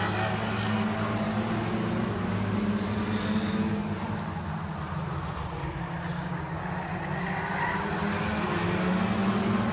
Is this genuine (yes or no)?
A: yes